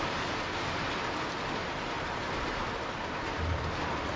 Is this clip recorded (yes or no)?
yes